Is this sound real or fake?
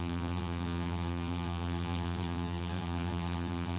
fake